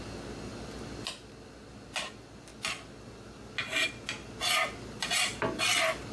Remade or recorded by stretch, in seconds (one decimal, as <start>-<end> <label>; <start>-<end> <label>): 0.0-6.1 recorded

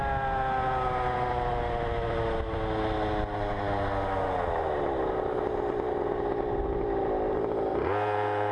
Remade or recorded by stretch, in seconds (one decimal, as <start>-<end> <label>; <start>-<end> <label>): 0.0-7.7 recorded; 7.7-8.5 remade

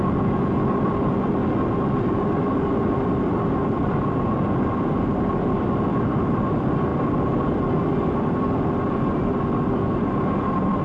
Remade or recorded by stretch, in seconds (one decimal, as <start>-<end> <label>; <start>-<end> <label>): 0.0-10.8 remade

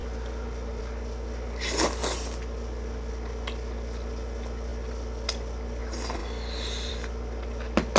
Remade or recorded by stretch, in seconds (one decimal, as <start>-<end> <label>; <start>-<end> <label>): 0.0-2.0 recorded; 2.0-3.1 remade; 3.1-4.7 recorded; 4.7-5.8 remade; 5.8-6.2 recorded; 6.2-6.9 remade; 6.9-8.0 recorded

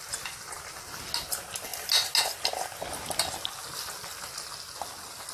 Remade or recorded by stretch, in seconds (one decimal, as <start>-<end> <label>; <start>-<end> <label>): 0.0-5.3 recorded

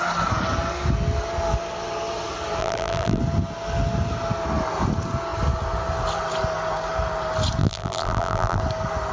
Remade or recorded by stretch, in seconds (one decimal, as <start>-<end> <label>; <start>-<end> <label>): 0.0-2.6 recorded; 2.6-3.2 remade; 3.2-7.6 recorded; 7.6-8.6 remade; 8.6-9.1 recorded